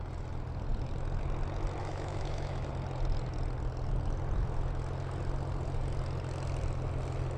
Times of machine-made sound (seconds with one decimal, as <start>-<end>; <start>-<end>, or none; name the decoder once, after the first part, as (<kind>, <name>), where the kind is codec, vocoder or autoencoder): 1.8-2.7 (autoencoder, DAC-VAE)